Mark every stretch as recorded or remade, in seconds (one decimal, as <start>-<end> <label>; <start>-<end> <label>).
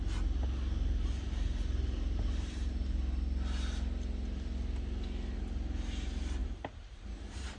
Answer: 0.0-6.4 recorded; 6.4-7.0 remade; 7.0-7.6 recorded